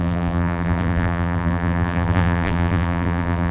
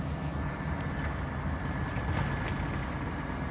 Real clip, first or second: second